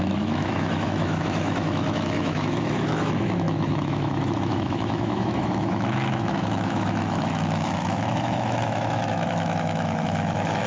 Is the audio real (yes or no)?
no